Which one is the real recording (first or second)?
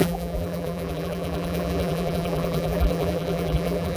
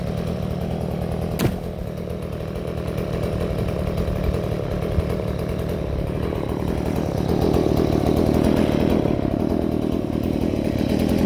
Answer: second